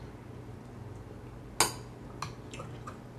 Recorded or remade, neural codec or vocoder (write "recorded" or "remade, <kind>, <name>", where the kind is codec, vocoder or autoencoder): recorded